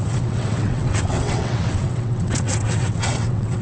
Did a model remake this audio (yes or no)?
yes